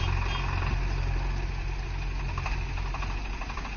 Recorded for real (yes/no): yes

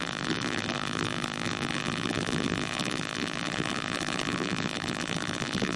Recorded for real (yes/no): no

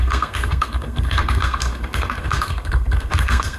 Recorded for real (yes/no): no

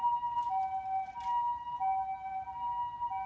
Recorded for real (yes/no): yes